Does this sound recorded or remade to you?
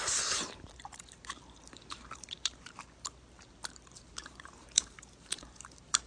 remade